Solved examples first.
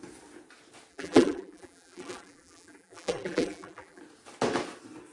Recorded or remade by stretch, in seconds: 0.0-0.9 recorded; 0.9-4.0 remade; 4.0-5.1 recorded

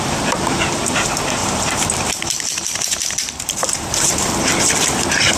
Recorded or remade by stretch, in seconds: 0.0-5.4 remade

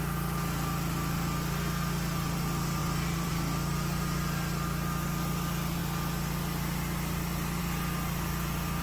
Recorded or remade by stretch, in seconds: 0.0-2.8 recorded; 2.8-3.3 remade; 3.3-8.8 recorded

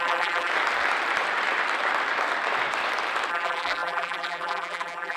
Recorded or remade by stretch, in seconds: 0.0-0.5 remade; 0.5-3.3 recorded; 3.3-5.2 remade

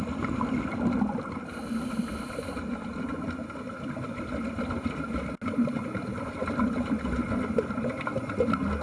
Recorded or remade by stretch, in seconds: 0.0-8.8 recorded

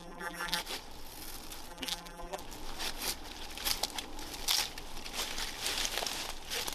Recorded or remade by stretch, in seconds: 0.0-0.6 remade; 0.6-1.7 recorded; 1.7-2.4 remade; 2.4-6.7 recorded

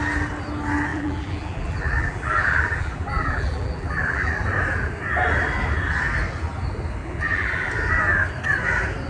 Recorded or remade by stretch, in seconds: 0.0-0.9 recorded; 0.9-4.3 remade; 4.3-7.0 recorded; 7.0-7.7 remade; 7.7-9.1 recorded